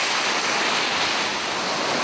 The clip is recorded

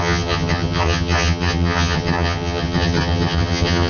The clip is remade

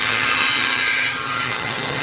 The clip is remade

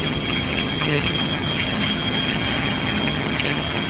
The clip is remade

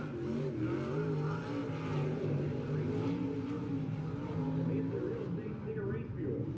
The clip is recorded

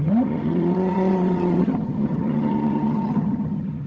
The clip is remade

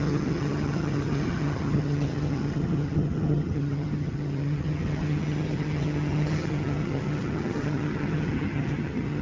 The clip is remade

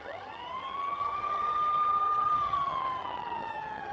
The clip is remade